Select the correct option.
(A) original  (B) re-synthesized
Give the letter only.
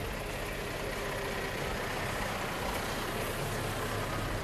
A